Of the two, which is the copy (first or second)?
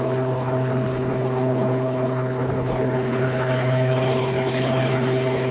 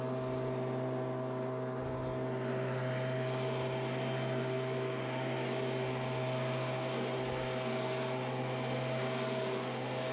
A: first